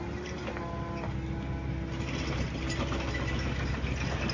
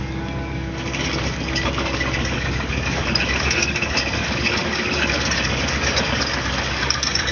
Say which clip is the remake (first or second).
second